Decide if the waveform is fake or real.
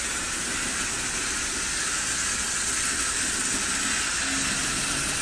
real